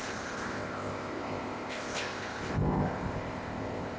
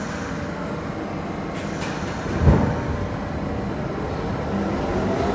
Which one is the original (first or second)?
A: second